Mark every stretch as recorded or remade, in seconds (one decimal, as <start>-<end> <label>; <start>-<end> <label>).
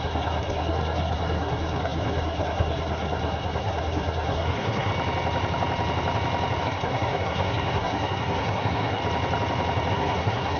0.0-4.9 remade; 4.9-6.6 recorded; 6.6-9.0 remade; 9.0-9.9 recorded; 9.9-10.6 remade